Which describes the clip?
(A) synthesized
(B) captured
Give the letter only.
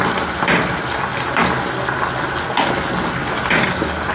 B